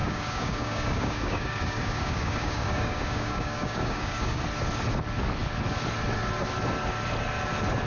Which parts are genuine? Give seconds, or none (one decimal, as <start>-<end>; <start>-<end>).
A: 4.4-7.9